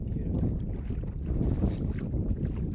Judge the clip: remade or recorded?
recorded